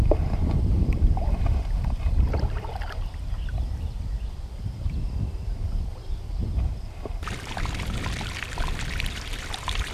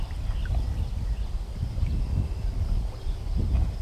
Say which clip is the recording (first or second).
second